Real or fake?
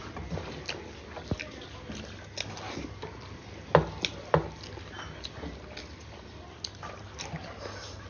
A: real